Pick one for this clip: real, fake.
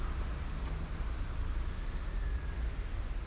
real